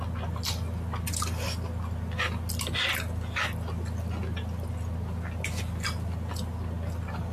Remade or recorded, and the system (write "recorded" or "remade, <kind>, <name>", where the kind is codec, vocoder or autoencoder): recorded